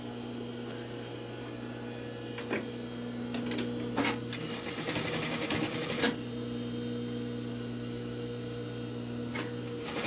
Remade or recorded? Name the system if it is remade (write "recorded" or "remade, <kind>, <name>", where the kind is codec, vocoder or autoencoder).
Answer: recorded